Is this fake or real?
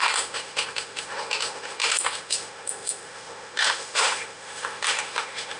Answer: fake